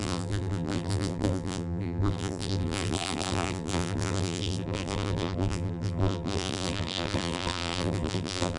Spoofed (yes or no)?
yes